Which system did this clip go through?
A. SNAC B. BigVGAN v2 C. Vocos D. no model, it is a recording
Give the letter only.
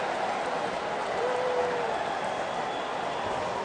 D